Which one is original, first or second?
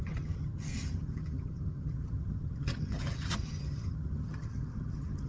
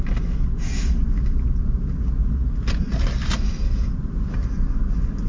second